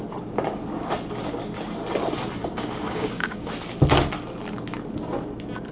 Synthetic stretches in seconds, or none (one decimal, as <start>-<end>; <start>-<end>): 2.4-3.5